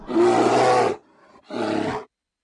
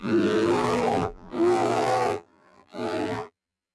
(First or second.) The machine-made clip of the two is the second